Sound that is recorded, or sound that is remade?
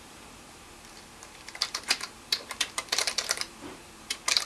remade